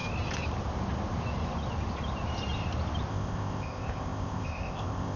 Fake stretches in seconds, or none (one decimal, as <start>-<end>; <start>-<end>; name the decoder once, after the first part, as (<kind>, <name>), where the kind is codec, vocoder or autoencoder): 3.1-5.2 (codec, ZipCodec)